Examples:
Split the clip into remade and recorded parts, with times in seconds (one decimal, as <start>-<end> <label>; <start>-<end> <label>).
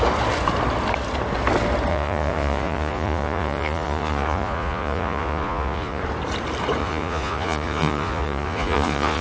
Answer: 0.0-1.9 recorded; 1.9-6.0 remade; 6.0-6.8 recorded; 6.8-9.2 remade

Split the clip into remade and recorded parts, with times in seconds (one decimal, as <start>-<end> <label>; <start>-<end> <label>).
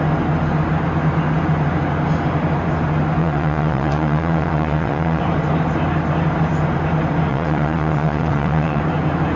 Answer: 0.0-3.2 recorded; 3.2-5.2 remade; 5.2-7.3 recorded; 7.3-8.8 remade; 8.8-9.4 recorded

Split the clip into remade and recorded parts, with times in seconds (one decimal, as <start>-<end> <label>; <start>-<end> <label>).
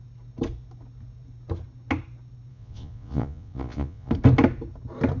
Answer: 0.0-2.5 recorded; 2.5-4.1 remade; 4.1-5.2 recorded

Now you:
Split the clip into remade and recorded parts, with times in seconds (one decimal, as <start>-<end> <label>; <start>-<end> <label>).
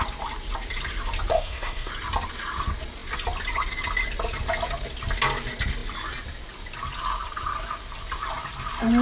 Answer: 0.0-1.3 recorded; 1.3-1.9 remade; 1.9-9.0 recorded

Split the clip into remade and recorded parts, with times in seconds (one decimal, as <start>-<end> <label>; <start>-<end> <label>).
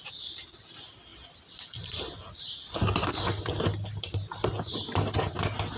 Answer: 0.0-5.8 recorded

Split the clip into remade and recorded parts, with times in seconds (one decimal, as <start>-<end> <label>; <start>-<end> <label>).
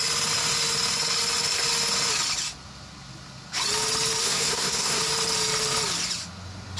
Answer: 0.0-4.2 recorded; 4.2-5.0 remade; 5.0-6.8 recorded